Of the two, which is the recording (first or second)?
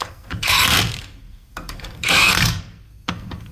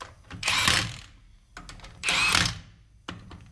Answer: second